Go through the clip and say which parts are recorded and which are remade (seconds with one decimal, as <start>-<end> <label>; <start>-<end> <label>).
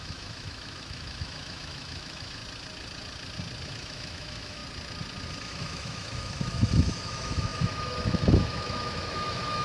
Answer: 0.0-2.4 remade; 2.4-3.7 recorded; 3.7-4.6 remade; 4.6-5.4 recorded; 5.4-9.6 remade